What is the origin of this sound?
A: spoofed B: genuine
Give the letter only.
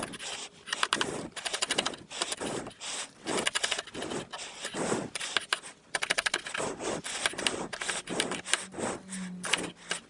B